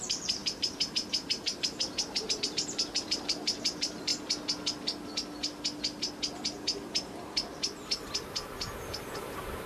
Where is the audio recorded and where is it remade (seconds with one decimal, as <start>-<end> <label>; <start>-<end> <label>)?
0.0-4.1 remade; 4.1-8.2 recorded; 8.2-9.7 remade